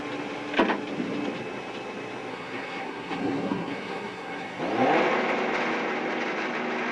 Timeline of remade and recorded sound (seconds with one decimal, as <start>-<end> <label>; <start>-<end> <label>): 0.0-2.3 recorded; 2.3-4.6 remade; 4.6-6.9 recorded